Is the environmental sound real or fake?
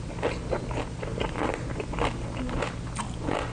real